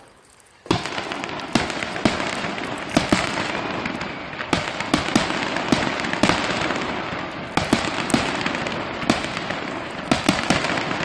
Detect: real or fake real